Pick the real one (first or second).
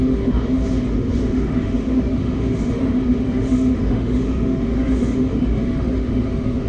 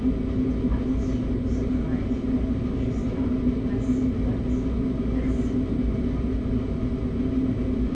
second